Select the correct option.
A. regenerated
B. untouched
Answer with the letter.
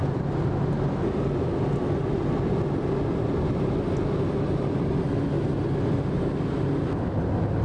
B